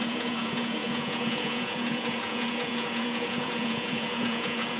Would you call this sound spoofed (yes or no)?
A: yes